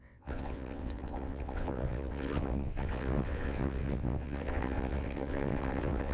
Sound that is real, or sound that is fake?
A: fake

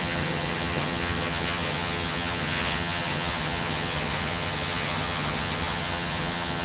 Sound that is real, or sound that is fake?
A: fake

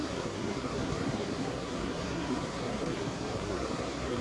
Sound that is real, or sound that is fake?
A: fake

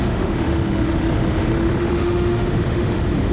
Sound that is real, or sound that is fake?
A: fake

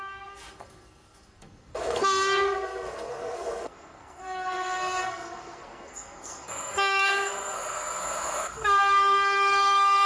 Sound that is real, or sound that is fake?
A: fake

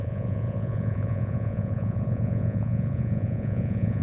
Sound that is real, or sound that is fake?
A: fake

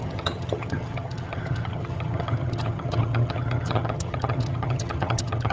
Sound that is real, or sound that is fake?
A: fake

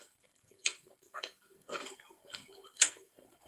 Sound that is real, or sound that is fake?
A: fake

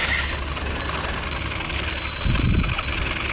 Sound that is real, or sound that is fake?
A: real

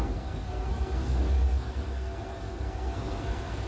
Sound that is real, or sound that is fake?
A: fake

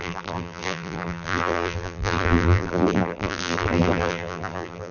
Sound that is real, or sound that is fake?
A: fake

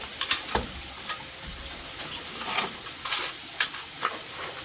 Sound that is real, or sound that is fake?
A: real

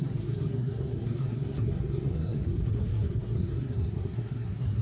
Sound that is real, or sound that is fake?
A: fake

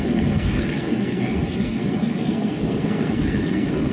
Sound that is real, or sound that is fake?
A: fake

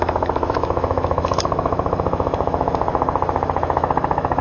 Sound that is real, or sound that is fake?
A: fake